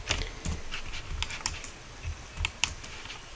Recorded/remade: recorded